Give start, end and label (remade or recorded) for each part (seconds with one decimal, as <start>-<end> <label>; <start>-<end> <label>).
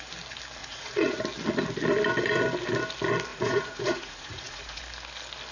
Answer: 0.0-0.6 recorded; 0.6-1.2 remade; 1.2-3.3 recorded; 3.3-4.8 remade; 4.8-5.5 recorded